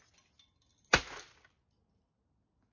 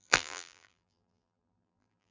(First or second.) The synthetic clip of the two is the second